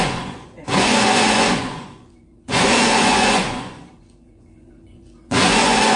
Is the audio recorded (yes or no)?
no